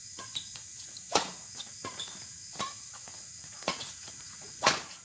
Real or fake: fake